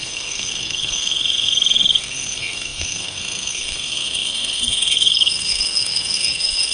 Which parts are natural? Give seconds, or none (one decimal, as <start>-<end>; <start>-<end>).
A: none